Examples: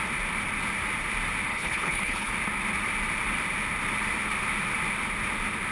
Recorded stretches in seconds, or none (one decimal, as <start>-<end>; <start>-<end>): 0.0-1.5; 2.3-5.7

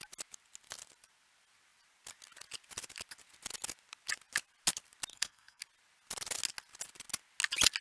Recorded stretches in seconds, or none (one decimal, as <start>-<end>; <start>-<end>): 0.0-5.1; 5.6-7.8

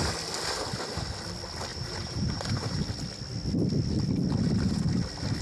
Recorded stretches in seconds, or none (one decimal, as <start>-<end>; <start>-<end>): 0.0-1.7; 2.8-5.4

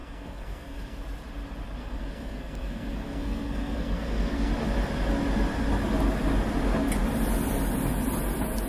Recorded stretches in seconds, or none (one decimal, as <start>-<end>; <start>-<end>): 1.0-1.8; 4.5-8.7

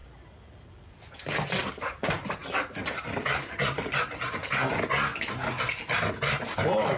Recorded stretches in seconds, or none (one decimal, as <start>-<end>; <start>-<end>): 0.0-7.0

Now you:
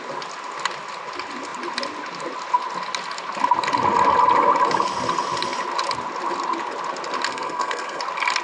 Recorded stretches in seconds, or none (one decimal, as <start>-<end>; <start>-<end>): 0.0-7.3; 8.0-8.4

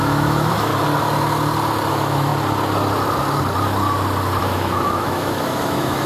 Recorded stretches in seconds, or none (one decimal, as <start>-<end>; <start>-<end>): 0.7-1.9; 2.3-4.4

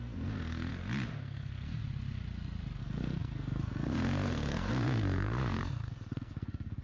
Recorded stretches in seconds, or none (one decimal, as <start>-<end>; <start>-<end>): 0.7-1.2; 1.8-2.8